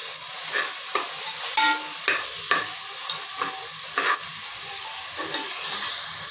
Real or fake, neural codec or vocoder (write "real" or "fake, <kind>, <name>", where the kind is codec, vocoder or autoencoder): real